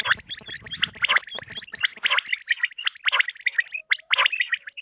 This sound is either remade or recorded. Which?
recorded